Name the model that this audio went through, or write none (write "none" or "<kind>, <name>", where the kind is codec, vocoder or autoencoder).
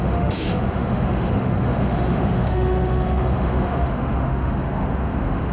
autoencoder, DAC-VAE